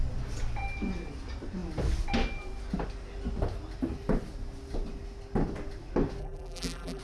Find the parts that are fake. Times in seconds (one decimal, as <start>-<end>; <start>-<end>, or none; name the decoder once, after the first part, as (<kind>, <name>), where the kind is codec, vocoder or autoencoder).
6.2-7.0 (vocoder, BigVGAN v2)